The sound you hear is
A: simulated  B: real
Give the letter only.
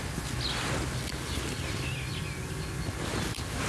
B